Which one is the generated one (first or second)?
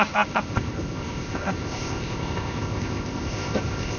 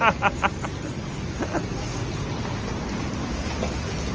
first